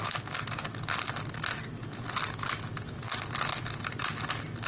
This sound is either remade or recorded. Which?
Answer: recorded